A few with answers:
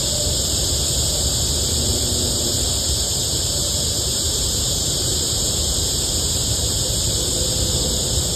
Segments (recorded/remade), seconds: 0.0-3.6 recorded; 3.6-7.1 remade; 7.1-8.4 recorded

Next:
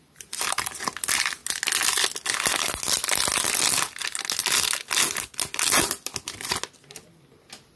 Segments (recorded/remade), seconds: 0.0-7.8 recorded

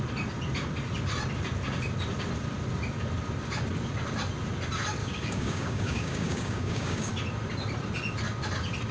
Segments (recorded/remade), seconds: 0.0-5.0 recorded; 5.0-7.1 remade; 7.1-8.9 recorded

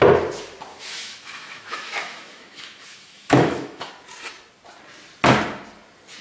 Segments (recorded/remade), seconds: 0.0-0.7 recorded; 0.7-3.9 remade; 3.9-6.2 recorded